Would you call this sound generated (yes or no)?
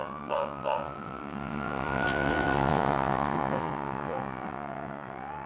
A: yes